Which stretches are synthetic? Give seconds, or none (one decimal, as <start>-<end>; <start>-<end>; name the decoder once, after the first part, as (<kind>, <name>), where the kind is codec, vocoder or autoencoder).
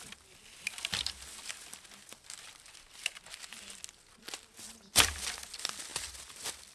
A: none